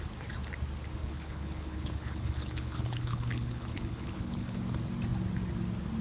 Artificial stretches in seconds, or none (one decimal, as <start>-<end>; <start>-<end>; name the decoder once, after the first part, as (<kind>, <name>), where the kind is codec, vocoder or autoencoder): 1.0-4.6 (codec, HILCodec)